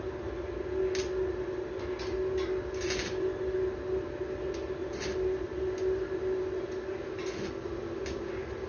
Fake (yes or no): no